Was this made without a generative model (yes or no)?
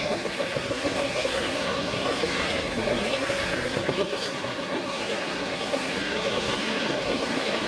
no